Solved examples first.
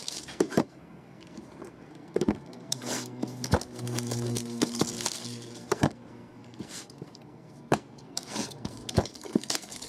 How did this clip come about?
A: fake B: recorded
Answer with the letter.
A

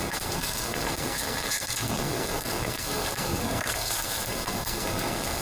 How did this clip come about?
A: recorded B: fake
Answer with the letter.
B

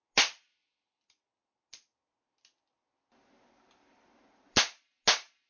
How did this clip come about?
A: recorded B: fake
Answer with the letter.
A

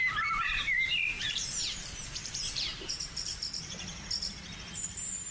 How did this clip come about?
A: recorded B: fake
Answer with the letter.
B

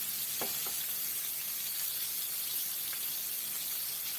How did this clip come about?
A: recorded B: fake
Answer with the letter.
A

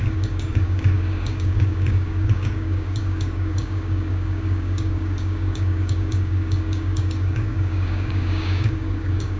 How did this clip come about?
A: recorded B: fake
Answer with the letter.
B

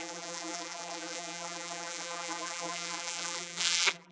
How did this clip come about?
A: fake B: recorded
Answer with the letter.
A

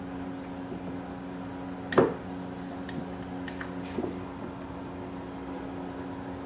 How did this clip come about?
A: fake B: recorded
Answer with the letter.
B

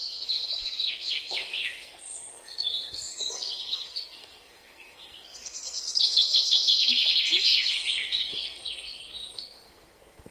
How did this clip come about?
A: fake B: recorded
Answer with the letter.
A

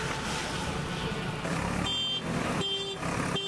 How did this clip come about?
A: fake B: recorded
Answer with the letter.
B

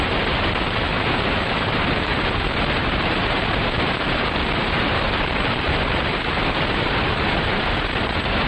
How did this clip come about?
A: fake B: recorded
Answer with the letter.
A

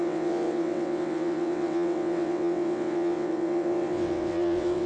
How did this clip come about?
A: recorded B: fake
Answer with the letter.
B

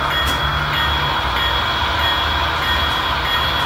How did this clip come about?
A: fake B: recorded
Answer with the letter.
B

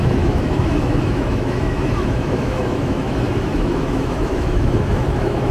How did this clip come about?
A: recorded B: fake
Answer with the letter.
B